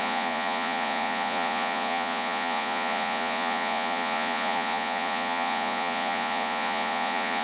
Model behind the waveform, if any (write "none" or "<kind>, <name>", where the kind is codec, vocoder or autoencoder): vocoder, Vocos